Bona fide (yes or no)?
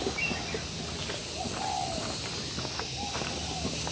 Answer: yes